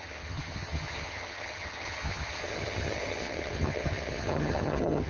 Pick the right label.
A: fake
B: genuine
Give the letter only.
A